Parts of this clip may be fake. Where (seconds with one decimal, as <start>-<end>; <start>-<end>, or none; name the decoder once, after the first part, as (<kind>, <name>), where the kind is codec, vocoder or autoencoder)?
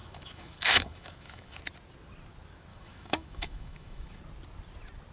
0.0-1.6 (autoencoder, DAC-VAE); 2.7-4.2